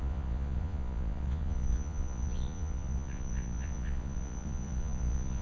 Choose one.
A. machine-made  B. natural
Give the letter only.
A